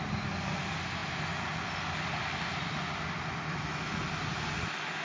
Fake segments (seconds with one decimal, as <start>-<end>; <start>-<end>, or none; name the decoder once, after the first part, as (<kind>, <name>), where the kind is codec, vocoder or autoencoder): 3.5-4.0 (autoencoder, DAC-VAE)